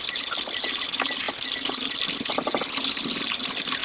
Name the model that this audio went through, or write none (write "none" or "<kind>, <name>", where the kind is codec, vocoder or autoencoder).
none